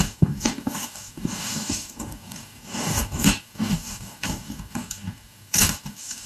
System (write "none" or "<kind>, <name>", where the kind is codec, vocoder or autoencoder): codec, DAC